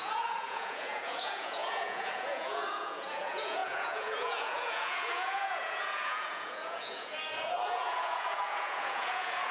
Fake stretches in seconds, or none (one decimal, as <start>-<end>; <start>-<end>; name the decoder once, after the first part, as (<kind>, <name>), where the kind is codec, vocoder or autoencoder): 0.0-9.5 (vocoder, Vocos)